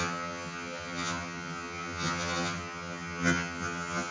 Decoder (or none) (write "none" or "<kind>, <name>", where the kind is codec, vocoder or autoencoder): vocoder, HiFi-GAN